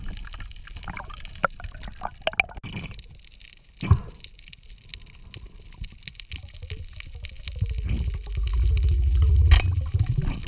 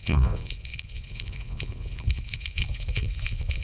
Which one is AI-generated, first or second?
second